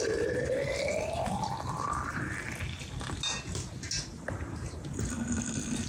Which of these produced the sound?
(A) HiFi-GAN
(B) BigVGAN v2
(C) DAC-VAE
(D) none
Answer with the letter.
D